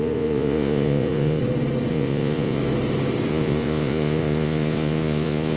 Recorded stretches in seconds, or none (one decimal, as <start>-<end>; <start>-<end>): 1.4-1.9; 2.6-3.3